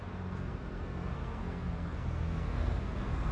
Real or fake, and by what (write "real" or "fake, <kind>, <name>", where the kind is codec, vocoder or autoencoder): fake, codec, SNAC